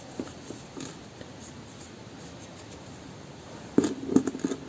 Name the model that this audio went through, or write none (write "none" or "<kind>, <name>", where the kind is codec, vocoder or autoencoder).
none